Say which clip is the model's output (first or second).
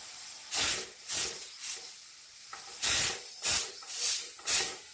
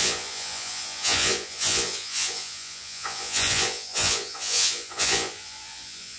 second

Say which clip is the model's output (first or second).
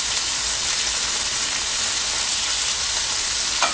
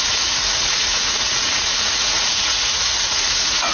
second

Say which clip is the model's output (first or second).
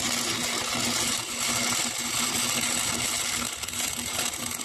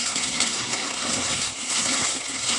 second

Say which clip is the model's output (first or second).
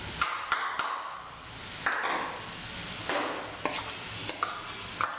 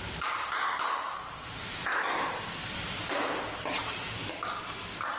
second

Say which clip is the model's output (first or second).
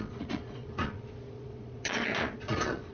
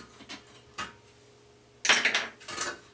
first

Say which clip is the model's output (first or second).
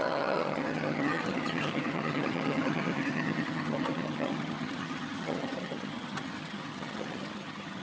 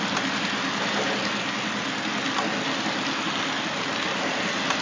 first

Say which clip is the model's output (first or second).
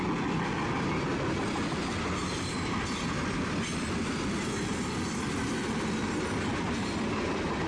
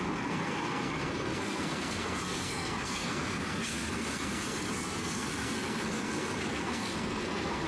second